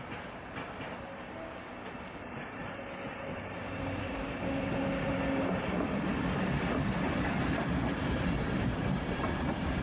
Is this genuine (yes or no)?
yes